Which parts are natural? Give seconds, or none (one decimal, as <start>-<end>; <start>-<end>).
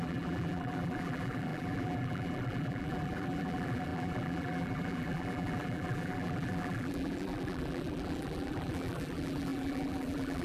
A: none